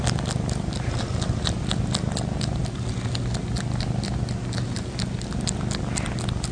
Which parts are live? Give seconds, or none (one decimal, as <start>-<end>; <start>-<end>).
0.0-6.5